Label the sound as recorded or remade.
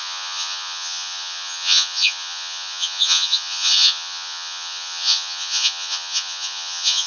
remade